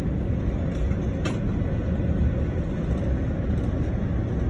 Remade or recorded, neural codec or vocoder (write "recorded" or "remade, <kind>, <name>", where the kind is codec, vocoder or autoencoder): recorded